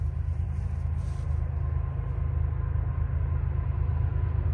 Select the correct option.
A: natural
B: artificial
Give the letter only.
A